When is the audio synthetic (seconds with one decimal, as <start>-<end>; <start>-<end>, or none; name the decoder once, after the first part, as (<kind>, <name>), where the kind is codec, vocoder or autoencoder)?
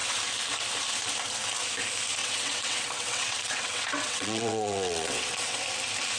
2.2-5.6 (vocoder, WaveNeXt)